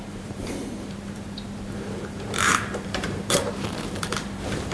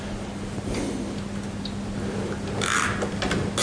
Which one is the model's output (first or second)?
first